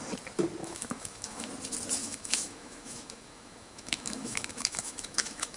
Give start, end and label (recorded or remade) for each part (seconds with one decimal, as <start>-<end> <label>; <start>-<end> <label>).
0.0-0.6 recorded; 0.6-1.5 remade; 1.5-2.0 recorded; 2.0-5.6 remade